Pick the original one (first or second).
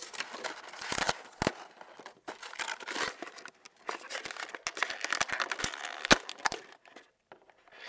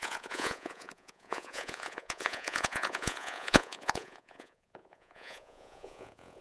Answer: first